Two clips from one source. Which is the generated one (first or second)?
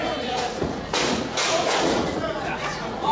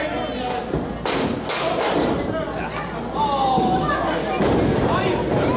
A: first